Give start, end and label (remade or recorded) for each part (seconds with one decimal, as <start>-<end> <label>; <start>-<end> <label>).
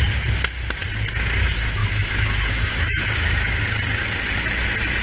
0.0-1.8 recorded; 1.8-3.6 remade; 3.6-5.0 recorded